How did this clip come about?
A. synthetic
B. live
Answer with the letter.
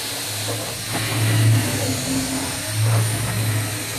B